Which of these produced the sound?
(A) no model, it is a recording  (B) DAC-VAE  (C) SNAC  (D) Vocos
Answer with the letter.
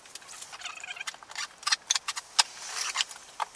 A